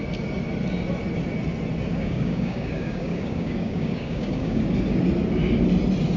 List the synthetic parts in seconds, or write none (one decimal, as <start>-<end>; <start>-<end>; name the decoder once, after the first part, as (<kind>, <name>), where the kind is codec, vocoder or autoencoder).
1.9-4.6 (codec, DAC)